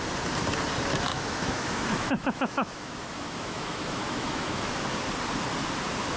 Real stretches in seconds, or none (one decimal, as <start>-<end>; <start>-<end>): 0.0-1.1; 4.7-6.2